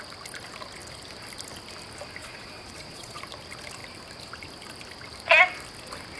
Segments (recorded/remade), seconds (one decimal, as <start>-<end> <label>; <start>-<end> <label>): 0.0-2.2 recorded; 2.2-3.2 remade; 3.2-6.2 recorded